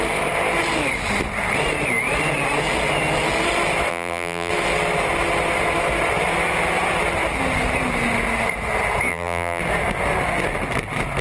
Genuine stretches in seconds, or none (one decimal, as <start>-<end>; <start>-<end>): 0.0-3.9; 4.5-9.1; 9.6-11.2